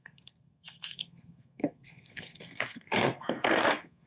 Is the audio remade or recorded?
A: remade